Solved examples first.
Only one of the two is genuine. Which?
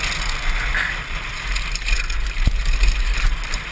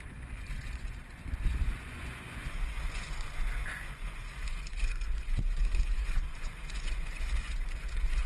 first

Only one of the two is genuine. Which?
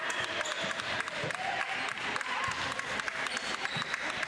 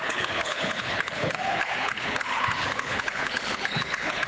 first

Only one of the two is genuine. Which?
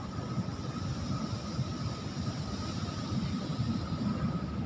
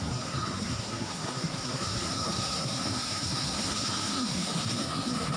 first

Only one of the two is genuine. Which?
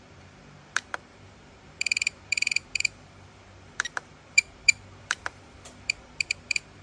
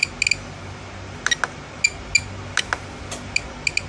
second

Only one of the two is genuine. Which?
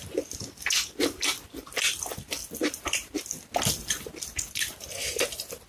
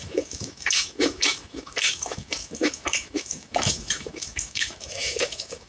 first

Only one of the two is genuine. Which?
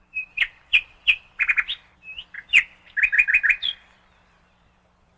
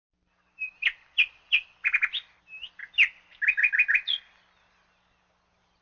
second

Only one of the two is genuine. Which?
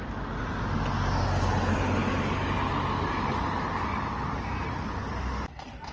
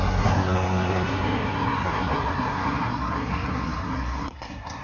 first